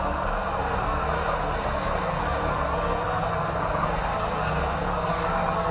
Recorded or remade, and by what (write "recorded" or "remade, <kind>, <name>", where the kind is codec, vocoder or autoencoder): remade, codec, SNAC